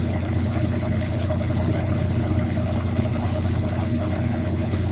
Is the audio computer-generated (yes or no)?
yes